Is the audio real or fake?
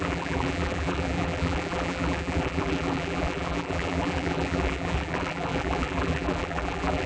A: fake